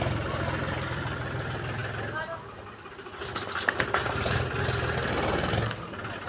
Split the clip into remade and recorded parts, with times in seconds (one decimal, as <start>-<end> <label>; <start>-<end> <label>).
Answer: 0.0-6.3 recorded